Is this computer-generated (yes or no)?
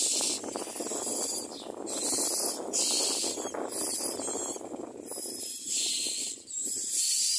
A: no